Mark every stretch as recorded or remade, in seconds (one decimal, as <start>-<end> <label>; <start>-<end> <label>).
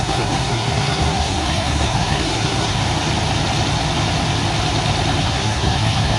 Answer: 0.0-2.8 remade; 2.8-5.2 recorded; 5.2-6.2 remade